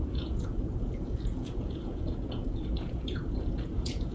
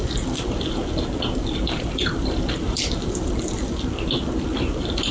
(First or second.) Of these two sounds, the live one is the second